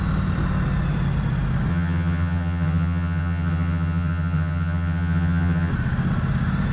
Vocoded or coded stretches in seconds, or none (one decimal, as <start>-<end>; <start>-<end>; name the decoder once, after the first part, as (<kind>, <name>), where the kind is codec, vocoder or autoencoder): 1.7-5.7 (vocoder, HiFi-GAN)